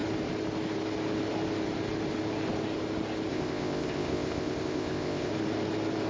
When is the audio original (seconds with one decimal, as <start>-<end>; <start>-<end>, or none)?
0.0-3.3; 5.3-6.1